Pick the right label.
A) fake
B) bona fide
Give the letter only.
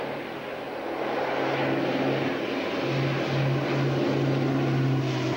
B